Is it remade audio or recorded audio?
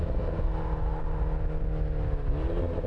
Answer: recorded